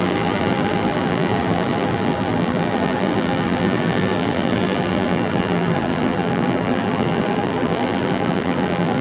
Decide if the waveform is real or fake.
fake